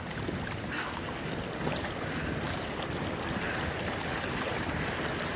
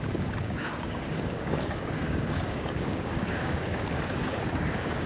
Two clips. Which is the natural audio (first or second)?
first